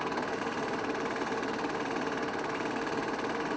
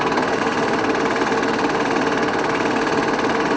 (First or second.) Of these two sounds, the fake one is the first